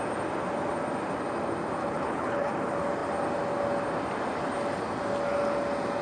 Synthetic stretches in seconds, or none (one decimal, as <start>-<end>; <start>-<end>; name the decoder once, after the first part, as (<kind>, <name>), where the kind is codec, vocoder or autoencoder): 1.8-2.5 (codec, HILCodec)